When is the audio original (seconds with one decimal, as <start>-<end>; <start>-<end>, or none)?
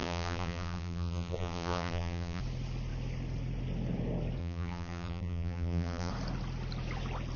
2.4-4.4; 6.1-7.4